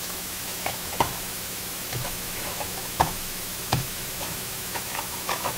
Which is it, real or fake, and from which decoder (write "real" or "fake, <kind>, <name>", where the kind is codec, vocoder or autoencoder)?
fake, autoencoder, DAC-VAE